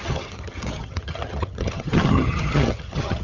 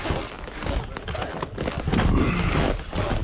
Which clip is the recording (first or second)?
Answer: second